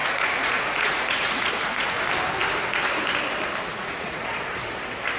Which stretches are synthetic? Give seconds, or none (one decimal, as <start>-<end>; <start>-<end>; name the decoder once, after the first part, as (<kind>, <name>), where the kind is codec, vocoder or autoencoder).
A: 0.0-2.0 (vocoder, Vocos); 3.7-4.8